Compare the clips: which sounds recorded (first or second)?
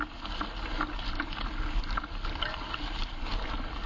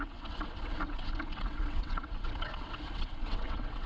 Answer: first